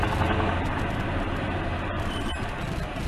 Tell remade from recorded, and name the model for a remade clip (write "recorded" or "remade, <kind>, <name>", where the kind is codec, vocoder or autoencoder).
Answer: recorded